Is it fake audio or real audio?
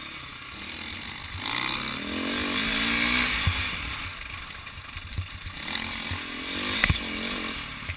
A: real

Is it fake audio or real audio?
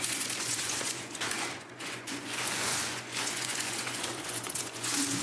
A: fake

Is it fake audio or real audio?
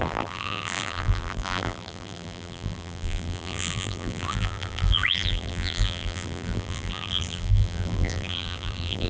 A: fake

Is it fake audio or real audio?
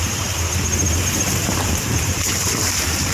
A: fake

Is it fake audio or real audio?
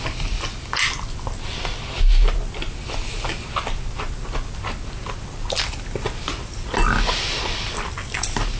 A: real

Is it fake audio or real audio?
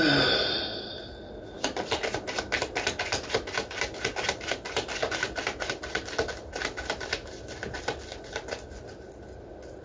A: real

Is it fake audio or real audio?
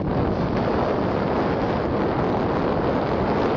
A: real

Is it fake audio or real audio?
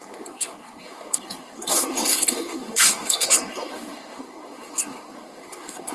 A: fake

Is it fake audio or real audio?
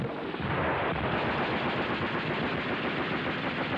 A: real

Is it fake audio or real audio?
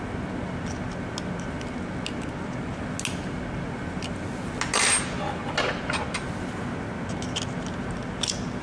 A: real